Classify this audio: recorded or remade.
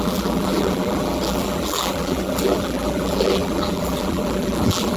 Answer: remade